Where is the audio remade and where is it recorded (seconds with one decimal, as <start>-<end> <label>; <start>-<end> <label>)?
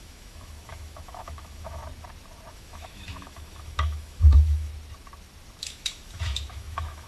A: 0.0-1.8 remade; 1.8-2.5 recorded; 2.5-4.7 remade; 4.7-5.6 recorded; 5.6-7.1 remade